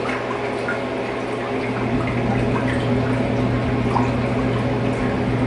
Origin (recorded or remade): recorded